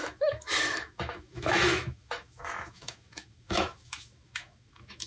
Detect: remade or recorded remade